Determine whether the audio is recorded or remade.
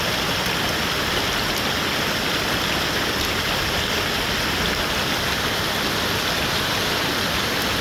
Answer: recorded